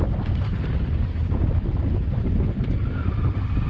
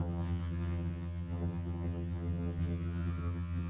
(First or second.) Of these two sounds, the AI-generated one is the second